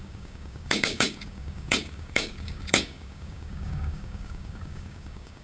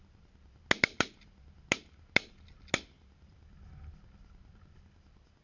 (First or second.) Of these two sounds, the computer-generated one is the first